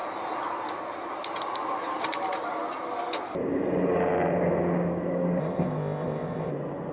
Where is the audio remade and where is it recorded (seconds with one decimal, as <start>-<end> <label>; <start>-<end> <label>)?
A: 0.0-5.4 recorded; 5.4-6.5 remade; 6.5-6.9 recorded